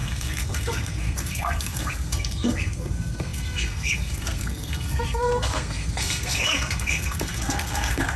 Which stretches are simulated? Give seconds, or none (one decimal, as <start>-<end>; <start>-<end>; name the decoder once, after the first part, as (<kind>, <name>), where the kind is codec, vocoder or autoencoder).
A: 0.0-8.2 (codec, SNAC)